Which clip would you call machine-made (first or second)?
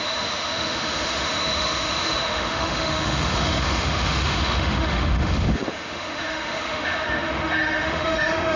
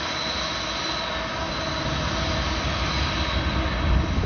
first